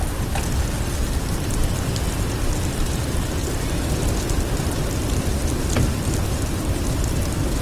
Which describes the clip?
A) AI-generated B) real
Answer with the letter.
B